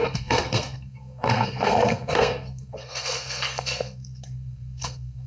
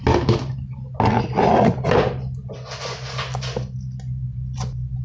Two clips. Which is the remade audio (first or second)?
first